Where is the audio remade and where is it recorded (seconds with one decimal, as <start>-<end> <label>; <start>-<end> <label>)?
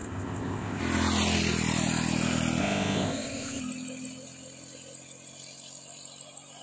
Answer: 0.0-0.8 remade; 0.8-2.6 recorded; 2.6-3.6 remade; 3.6-6.6 recorded